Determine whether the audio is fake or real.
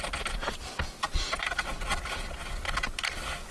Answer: real